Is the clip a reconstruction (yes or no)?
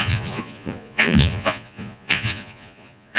yes